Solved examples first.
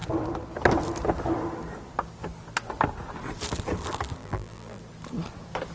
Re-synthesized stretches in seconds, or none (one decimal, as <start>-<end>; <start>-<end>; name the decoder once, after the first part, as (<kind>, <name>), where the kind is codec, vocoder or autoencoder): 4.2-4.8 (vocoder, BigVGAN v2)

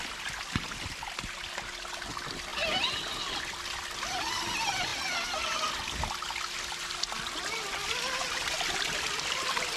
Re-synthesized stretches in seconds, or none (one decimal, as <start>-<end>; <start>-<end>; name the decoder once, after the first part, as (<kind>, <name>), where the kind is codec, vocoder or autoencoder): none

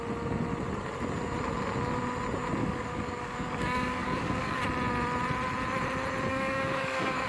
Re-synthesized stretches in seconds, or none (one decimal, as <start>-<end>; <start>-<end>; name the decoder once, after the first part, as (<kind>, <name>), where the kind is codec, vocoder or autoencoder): 2.6-4.6 (codec, DAC); 6.3-7.3